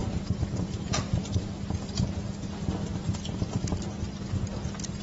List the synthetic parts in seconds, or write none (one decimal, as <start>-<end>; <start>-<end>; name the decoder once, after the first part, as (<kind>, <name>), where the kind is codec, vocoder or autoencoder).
2.9-4.2 (vocoder, BigVGAN v2)